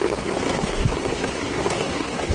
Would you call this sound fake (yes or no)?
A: yes